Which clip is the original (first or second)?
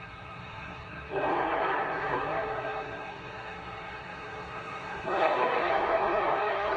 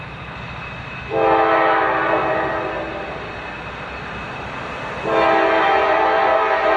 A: second